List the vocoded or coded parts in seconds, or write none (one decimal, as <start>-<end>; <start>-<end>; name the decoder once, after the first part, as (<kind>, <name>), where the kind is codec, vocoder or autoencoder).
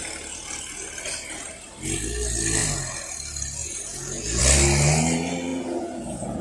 3.6-4.4 (vocoder, Vocos); 5.5-6.4